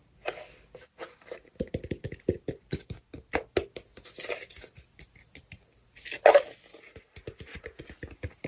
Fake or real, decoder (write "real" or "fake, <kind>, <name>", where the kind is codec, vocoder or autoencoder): real